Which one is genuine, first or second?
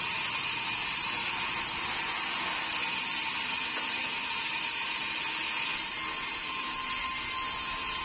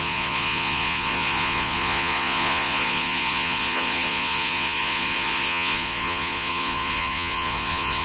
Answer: first